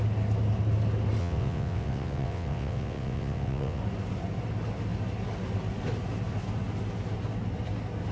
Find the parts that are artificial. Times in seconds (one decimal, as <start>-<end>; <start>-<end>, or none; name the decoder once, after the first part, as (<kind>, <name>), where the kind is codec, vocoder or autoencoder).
1.2-3.8 (vocoder, WaveNeXt)